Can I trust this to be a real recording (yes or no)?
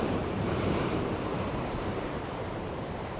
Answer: no